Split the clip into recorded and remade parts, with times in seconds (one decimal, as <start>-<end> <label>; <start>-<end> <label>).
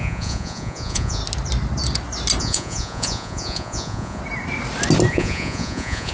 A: 0.0-1.2 remade; 1.2-2.4 recorded; 2.4-4.2 remade; 4.2-5.1 recorded; 5.1-6.1 remade